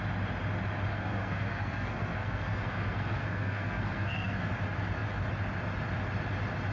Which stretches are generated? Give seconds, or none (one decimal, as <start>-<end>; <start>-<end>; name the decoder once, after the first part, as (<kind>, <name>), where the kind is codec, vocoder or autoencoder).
0.9-4.5 (codec, SNAC)